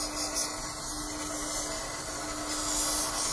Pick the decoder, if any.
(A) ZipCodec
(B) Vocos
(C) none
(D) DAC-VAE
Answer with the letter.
C